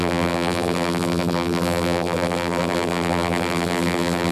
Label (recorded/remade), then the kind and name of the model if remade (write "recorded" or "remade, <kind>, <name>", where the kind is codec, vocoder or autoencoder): remade, vocoder, BigVGAN v2